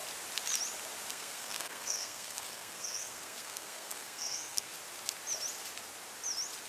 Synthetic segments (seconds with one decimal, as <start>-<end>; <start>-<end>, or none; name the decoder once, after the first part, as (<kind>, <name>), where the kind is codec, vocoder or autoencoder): 1.1-4.7 (codec, SNAC)